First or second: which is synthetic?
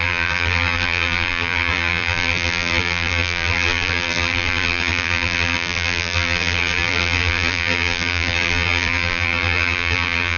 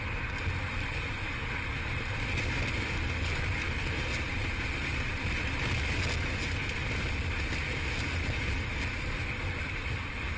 first